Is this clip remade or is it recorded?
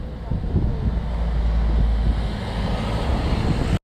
recorded